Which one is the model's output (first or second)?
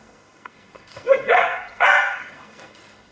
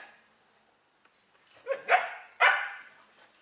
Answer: first